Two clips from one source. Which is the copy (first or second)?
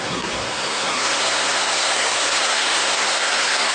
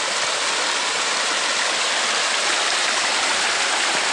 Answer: first